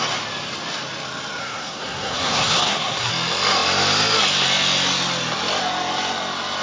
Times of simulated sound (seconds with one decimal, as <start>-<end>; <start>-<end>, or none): 1.4-3.1